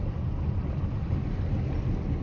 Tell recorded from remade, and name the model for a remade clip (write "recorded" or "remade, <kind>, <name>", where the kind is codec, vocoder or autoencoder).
recorded